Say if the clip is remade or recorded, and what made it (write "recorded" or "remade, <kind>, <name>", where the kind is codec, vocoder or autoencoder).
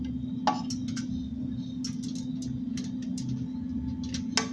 recorded